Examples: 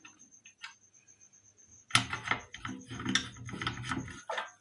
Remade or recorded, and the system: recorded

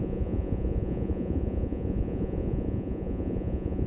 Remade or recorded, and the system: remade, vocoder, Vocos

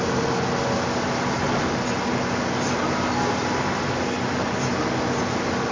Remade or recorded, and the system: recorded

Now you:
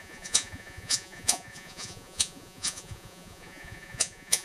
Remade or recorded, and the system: remade, vocoder, Vocos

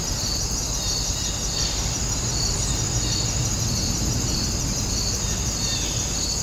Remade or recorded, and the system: recorded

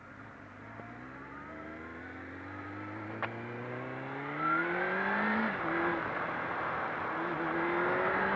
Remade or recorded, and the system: recorded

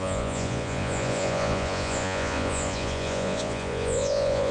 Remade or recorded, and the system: remade, vocoder, Vocos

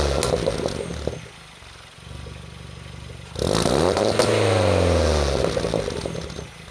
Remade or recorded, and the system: recorded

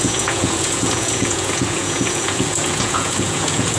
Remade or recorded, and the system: remade, vocoder, Vocos